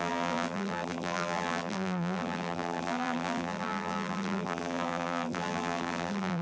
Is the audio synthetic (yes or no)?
yes